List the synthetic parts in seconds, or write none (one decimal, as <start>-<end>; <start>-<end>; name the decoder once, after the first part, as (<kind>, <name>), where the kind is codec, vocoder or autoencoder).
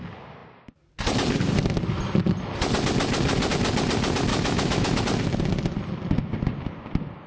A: 4.3-5.0 (autoencoder, DAC-VAE)